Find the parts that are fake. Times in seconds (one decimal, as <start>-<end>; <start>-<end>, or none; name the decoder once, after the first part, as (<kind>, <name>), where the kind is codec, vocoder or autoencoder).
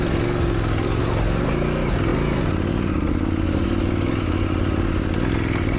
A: none